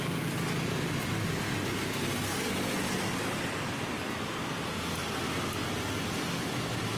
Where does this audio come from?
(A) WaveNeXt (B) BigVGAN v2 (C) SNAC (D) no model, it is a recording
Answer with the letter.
D